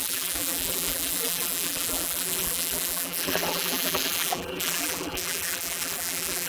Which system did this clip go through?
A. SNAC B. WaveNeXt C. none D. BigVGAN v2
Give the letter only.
D